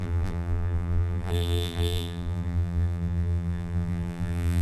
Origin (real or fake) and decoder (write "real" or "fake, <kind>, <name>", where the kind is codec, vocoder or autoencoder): fake, vocoder, BigVGAN v2